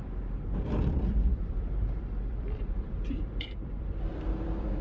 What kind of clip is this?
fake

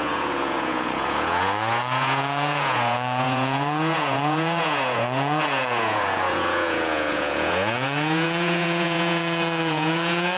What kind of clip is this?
fake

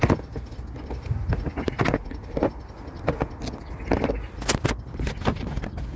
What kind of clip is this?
real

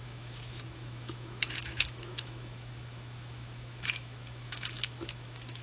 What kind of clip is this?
fake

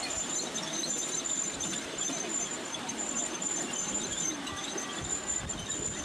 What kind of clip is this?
real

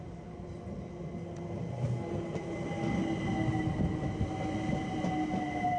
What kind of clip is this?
real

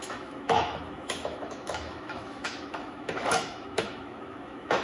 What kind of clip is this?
fake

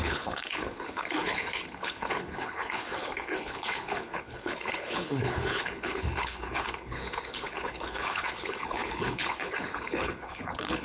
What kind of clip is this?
fake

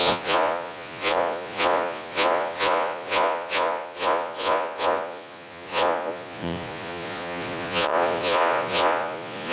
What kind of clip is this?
fake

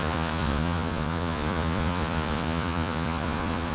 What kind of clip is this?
fake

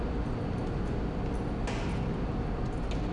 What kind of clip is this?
real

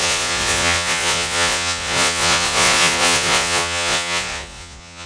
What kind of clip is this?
fake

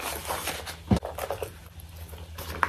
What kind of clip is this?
real